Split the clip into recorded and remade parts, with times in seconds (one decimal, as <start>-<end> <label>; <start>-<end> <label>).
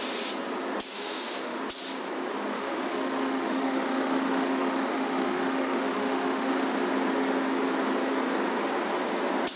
0.0-0.9 recorded; 0.9-1.6 remade; 1.6-2.5 recorded; 2.5-6.5 remade; 6.5-9.6 recorded